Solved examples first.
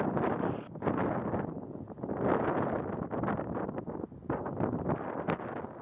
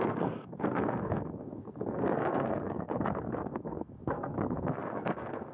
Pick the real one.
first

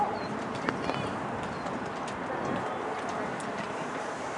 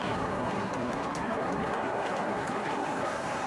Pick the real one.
first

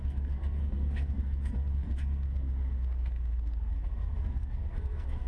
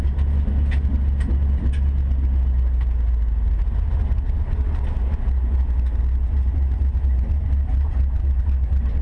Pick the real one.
second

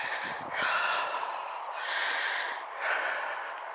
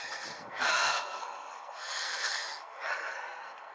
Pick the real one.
first